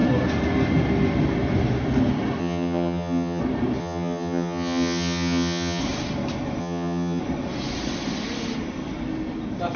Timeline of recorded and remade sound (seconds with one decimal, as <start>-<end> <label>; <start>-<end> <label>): 0.0-2.4 recorded; 2.4-3.4 remade; 3.4-3.8 recorded; 3.8-5.8 remade; 5.8-6.6 recorded; 6.6-7.2 remade; 7.2-9.8 recorded